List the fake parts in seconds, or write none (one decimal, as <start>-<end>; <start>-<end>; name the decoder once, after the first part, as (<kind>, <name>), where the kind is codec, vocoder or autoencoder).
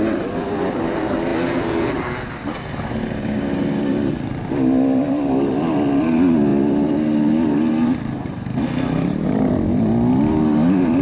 none